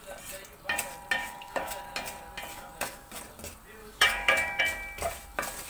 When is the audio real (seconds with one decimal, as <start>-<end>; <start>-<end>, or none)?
0.0-1.2; 1.8-2.5; 3.2-3.8; 4.6-5.7